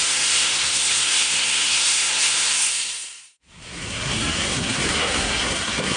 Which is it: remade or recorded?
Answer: remade